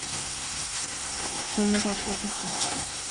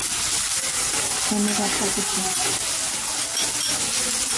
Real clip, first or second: second